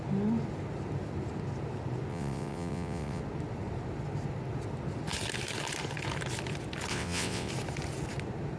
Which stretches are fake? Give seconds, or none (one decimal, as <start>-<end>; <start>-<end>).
2.1-3.2; 6.9-7.5